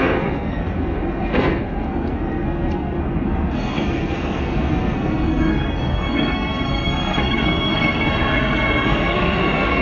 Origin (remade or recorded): remade